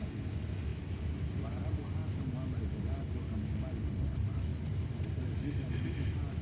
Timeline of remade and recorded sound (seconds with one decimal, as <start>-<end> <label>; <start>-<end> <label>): 0.0-6.4 recorded